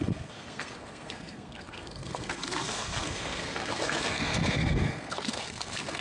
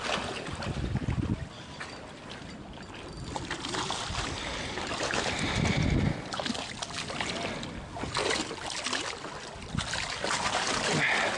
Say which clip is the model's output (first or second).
first